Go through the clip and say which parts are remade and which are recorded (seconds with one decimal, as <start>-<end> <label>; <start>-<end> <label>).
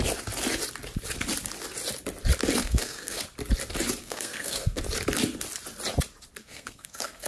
0.0-2.6 recorded; 2.6-3.2 remade; 3.2-4.0 recorded; 4.0-4.8 remade; 4.8-6.4 recorded; 6.4-7.3 remade